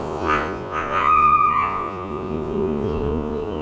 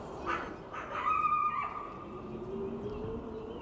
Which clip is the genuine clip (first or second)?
second